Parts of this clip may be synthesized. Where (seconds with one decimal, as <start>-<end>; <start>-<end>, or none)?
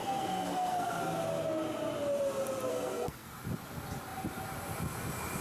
0.0-1.0; 2.7-3.4